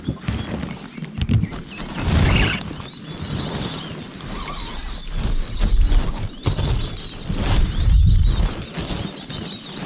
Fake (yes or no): no